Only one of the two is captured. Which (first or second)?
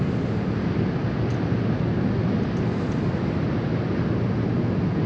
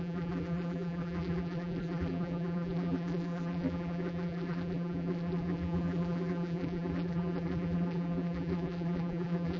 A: first